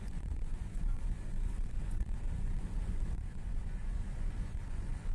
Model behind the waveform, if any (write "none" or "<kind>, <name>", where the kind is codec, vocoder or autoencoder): vocoder, Vocos